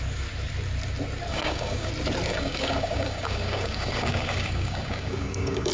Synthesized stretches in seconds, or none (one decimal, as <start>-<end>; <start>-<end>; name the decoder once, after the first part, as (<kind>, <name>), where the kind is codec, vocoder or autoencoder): 1.3-1.9 (codec, DAC); 2.3-5.7